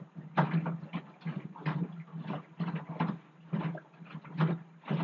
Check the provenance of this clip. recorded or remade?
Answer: recorded